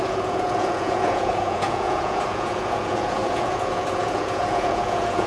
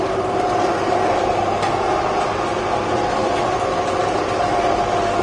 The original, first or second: second